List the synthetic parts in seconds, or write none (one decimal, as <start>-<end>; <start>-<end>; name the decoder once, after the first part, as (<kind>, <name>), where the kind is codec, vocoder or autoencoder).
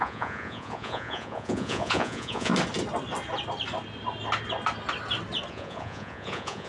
0.0-2.5 (vocoder, Vocos); 5.5-6.7